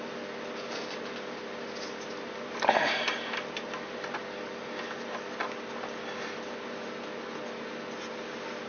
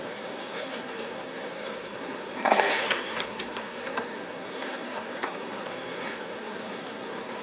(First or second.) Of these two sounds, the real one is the first